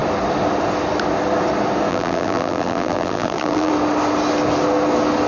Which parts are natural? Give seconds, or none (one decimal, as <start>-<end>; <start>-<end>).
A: 0.0-1.9; 3.7-5.3